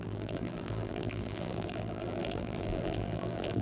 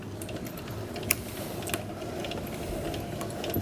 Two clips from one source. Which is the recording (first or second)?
second